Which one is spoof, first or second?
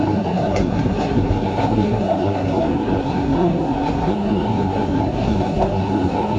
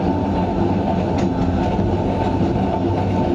first